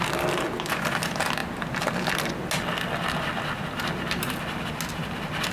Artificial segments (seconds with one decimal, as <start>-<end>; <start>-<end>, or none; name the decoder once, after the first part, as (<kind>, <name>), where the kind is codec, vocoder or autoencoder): none